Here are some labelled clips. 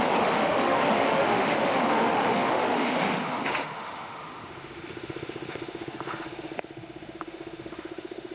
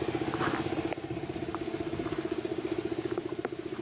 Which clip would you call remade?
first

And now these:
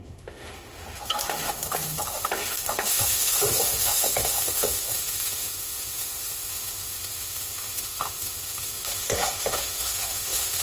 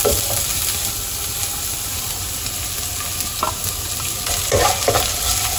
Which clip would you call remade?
first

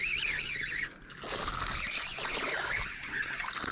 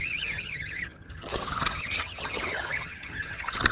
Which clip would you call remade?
second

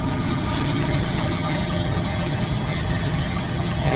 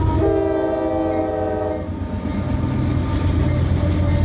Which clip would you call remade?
first